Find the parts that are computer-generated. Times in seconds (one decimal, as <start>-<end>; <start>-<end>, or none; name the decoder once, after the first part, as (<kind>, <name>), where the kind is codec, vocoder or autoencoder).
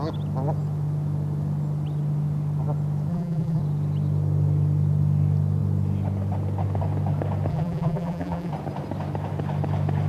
3.1-3.6 (vocoder, BigVGAN v2); 7.5-8.5